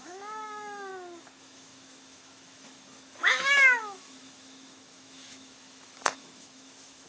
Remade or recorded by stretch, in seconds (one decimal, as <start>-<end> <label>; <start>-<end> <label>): 0.0-0.9 remade; 0.9-1.4 recorded; 1.4-7.1 remade